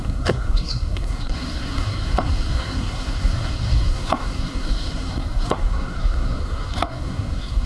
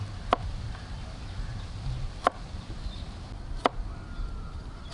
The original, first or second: second